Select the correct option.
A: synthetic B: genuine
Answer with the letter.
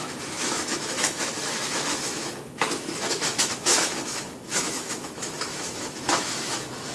A